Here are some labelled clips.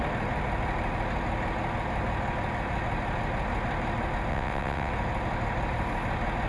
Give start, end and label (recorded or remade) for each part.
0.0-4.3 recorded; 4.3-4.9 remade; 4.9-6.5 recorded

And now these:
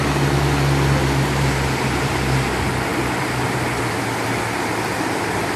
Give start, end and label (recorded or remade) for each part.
0.0-5.6 recorded

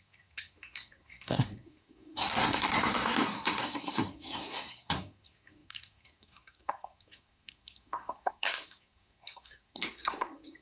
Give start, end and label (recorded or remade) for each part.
0.0-10.6 remade

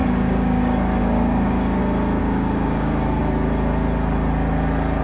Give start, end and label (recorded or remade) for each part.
0.0-0.6 remade; 0.6-1.0 recorded; 1.0-1.8 remade; 1.8-2.2 recorded; 2.2-3.2 remade; 3.2-5.0 recorded

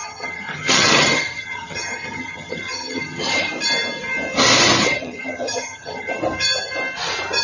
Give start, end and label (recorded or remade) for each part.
0.0-3.5 remade; 3.5-4.8 recorded; 4.8-6.1 remade; 6.1-7.4 recorded